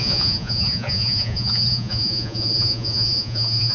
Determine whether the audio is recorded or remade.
remade